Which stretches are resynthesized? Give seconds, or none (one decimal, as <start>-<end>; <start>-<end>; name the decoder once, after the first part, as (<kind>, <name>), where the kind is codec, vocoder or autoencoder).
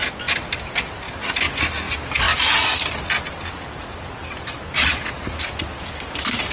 none